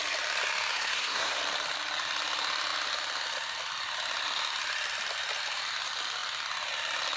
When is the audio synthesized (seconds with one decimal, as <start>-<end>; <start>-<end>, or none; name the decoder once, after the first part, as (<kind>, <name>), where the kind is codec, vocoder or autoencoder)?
0.7-1.4 (codec, SNAC)